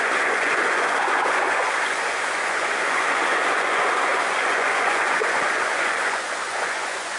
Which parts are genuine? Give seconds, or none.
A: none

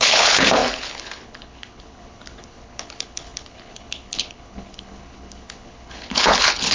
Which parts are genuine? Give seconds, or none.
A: none

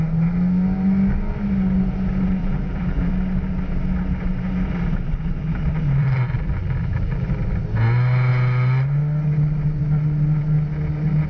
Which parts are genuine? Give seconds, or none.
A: 0.0-2.4; 3.1-6.0; 7.3-11.3

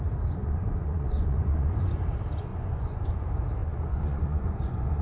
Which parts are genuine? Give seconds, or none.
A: 0.0-0.4; 1.9-2.5; 3.1-3.6

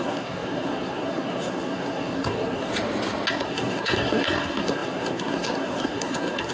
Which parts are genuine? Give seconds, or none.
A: 2.7-3.3

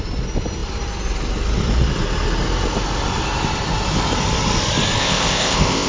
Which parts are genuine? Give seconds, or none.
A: 0.0-5.0

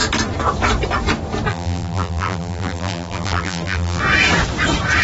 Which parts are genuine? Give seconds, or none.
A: 0.0-1.5; 4.0-5.0

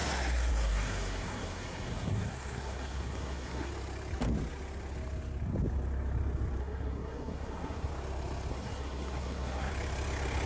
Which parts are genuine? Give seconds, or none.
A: 3.7-6.6; 7.9-8.5; 9.7-10.5